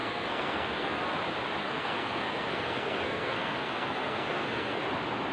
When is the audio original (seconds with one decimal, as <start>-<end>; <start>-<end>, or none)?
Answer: 1.0-1.6; 4.8-5.3